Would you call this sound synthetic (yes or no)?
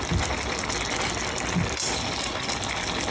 no